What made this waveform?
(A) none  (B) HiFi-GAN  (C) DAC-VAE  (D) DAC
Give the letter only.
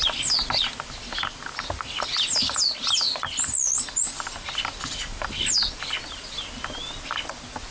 A